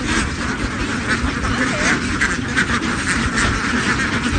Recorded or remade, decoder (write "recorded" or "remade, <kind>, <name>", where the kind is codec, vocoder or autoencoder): recorded